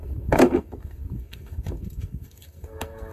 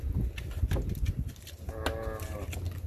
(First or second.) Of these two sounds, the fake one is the first